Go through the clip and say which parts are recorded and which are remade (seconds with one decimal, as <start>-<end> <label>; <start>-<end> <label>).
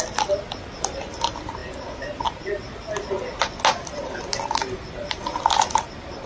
0.0-6.3 recorded